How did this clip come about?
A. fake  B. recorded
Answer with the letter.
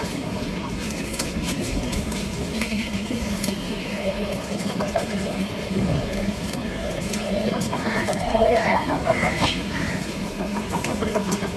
A